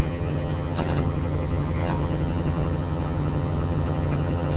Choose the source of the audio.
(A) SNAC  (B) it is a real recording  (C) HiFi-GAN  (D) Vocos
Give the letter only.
C